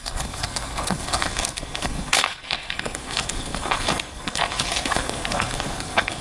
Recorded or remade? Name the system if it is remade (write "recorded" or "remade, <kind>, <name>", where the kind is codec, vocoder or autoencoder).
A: remade, codec, SNAC